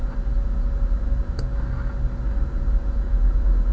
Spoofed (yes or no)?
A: no